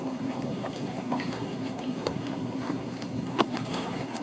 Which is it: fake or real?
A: fake